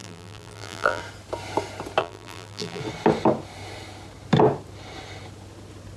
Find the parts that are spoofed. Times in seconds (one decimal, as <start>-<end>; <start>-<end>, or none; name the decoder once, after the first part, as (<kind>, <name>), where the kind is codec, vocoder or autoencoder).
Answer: 0.0-1.0 (vocoder, BigVGAN v2); 2.0-2.8